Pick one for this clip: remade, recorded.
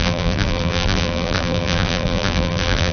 remade